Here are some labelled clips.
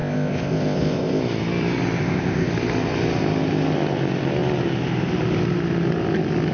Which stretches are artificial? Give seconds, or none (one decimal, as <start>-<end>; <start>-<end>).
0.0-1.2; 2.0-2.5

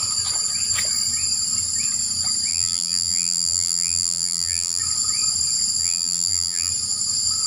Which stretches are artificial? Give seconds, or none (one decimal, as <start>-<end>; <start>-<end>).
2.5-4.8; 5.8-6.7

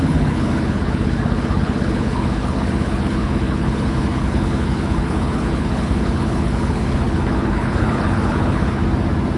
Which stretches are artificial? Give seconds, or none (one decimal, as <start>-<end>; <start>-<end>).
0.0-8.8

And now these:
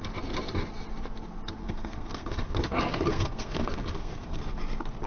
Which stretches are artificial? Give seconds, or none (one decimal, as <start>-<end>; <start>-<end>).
1.6-4.4

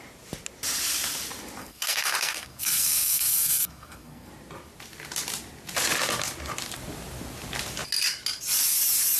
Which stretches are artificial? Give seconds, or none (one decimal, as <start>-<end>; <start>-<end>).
1.6-4.3